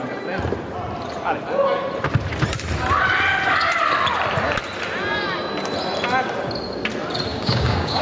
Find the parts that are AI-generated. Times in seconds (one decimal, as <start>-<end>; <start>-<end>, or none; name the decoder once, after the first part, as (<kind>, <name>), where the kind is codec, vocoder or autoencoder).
7.3-8.0 (codec, DAC)